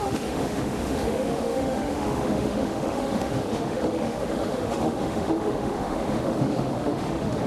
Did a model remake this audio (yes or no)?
yes